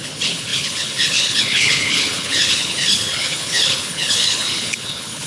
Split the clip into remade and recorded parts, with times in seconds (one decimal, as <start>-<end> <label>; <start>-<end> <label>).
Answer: 0.0-5.3 remade